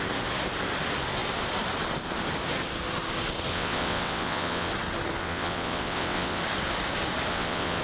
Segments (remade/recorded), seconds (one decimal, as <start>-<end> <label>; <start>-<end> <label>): 0.0-3.5 recorded; 3.5-4.7 remade; 4.7-5.2 recorded; 5.2-6.4 remade; 6.4-7.3 recorded; 7.3-7.8 remade